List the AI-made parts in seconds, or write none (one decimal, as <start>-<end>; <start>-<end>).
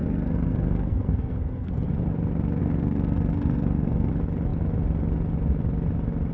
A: 0.0-1.7; 2.6-4.1